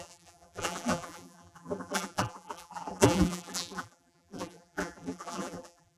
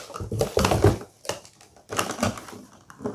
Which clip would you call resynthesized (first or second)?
first